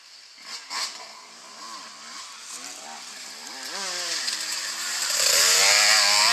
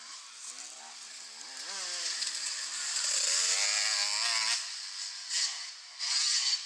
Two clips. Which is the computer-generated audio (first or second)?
first